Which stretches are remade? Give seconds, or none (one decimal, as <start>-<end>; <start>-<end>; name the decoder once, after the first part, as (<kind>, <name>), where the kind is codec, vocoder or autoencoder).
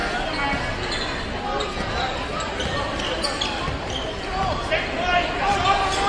none